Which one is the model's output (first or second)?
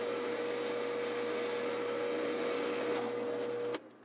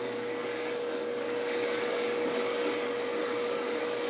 second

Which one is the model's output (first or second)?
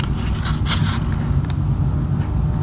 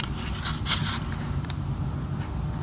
second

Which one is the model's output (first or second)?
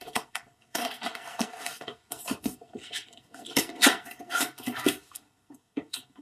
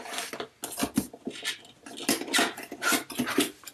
first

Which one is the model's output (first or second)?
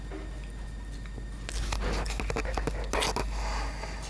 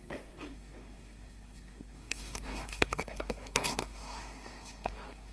second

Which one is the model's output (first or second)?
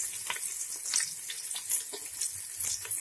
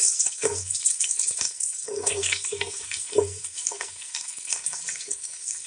second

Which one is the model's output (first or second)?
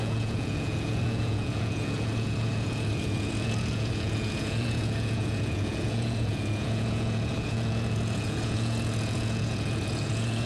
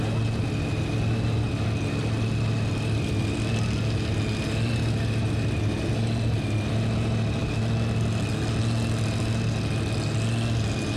first